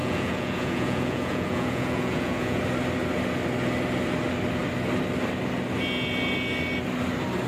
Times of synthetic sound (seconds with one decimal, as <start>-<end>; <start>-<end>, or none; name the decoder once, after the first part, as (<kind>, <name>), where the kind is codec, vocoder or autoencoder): 0.0-2.6 (vocoder, Vocos)